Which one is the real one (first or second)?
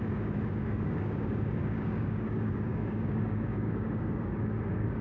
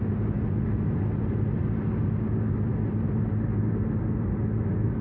second